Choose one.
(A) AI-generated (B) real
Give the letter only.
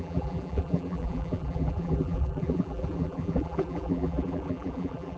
A